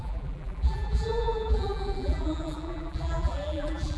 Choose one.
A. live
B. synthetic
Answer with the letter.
B